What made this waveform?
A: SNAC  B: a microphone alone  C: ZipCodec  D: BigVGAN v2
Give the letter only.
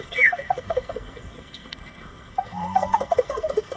A